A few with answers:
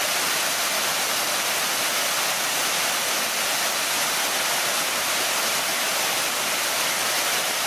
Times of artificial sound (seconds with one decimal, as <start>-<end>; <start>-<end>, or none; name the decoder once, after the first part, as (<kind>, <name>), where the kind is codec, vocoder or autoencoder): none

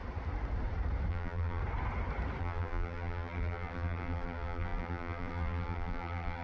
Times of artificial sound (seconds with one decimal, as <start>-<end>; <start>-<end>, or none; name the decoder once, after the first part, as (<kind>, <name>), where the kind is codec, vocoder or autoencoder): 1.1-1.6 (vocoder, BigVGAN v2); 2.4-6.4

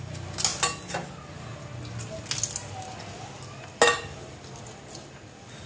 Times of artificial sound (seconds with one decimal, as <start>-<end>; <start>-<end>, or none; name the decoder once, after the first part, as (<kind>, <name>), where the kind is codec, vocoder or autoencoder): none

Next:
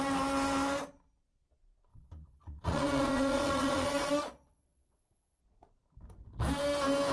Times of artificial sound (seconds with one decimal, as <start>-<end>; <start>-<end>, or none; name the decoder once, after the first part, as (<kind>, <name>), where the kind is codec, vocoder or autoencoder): 1.9-5.4 (vocoder, Vocos)